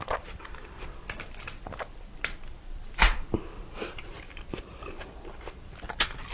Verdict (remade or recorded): remade